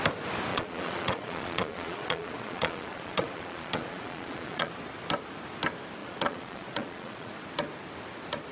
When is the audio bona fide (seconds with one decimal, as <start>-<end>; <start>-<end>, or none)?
0.0-0.5; 4.7-6.0; 7.3-8.5